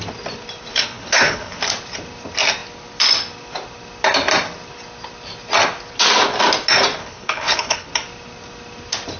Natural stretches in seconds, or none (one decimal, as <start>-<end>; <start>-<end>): 0.0-0.7; 1.6-7.0; 7.9-9.2